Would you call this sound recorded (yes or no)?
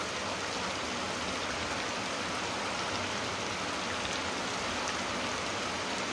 yes